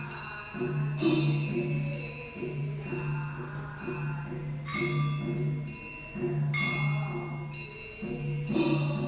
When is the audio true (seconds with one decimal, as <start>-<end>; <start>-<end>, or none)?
0.0-9.1